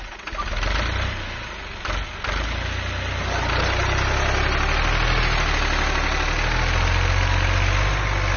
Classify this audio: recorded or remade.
recorded